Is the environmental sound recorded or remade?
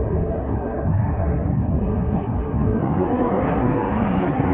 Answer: remade